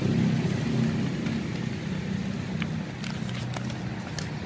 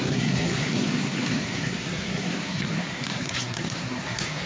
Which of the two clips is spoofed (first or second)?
second